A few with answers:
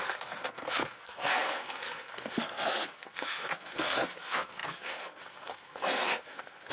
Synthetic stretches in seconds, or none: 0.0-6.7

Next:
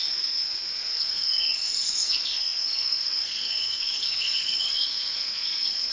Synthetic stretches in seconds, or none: 0.0-5.9

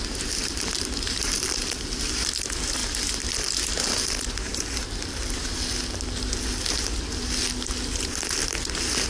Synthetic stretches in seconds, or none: none

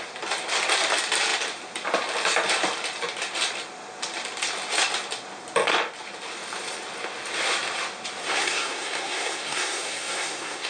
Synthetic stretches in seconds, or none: 8.2-10.7

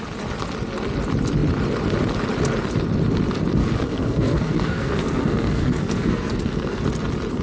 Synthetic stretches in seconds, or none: 3.6-6.8

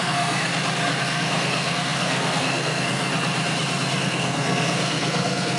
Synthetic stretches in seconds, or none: 0.0-0.5; 1.0-3.1; 4.0-5.6